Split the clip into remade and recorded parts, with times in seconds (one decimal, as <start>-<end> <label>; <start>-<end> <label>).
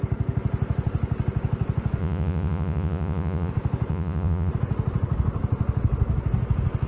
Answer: 0.0-2.0 recorded; 2.0-3.5 remade; 3.5-3.9 recorded; 3.9-4.5 remade; 4.5-6.9 recorded